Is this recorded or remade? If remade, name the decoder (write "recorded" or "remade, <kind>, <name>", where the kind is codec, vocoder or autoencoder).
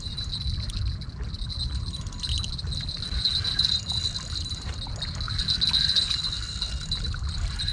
recorded